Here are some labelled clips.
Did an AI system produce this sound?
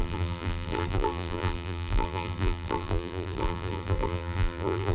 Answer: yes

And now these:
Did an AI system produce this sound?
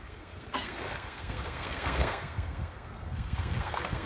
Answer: yes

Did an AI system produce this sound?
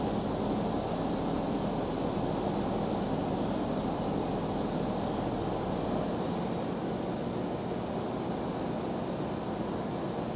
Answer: no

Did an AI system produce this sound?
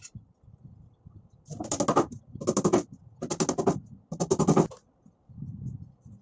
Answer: no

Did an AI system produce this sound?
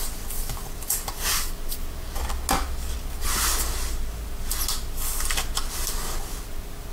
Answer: no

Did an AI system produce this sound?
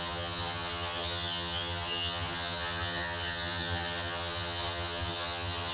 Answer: yes